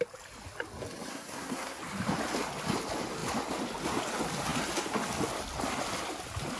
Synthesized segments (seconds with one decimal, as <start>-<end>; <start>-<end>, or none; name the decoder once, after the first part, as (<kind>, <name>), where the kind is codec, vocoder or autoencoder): 1.1-1.8 (codec, SNAC)